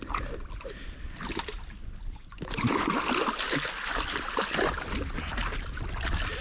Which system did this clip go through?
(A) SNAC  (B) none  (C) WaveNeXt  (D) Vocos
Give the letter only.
B